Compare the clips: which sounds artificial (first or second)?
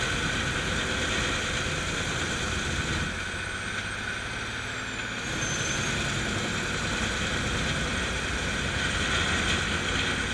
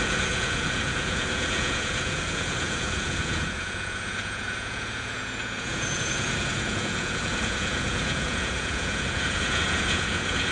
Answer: second